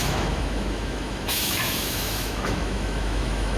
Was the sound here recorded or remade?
remade